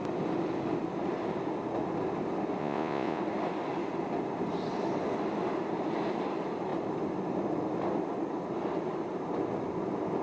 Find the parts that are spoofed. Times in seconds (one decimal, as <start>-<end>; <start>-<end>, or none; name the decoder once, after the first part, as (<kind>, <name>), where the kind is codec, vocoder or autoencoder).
2.6-3.2 (vocoder, Vocos)